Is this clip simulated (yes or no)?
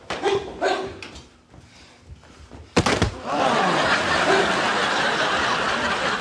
no